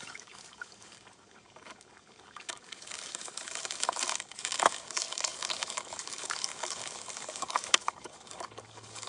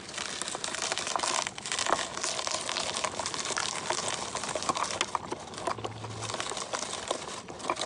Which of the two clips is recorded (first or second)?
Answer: second